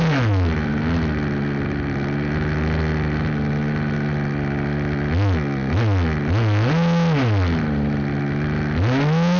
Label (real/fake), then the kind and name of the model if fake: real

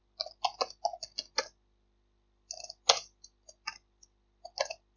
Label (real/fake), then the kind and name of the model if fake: real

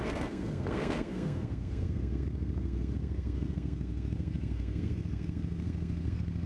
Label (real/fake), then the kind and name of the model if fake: fake, codec, SNAC